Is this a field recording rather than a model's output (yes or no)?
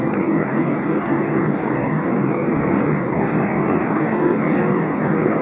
no